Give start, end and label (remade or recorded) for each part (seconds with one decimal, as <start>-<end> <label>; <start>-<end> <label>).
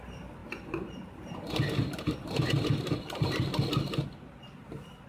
0.0-0.4 recorded; 0.4-3.4 remade; 3.4-5.1 recorded